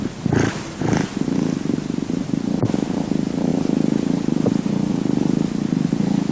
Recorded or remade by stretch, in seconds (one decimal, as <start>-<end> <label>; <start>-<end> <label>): 0.0-6.3 recorded